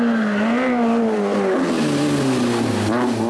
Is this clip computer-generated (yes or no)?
no